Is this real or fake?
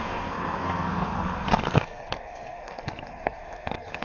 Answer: fake